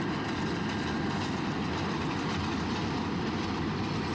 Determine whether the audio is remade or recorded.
recorded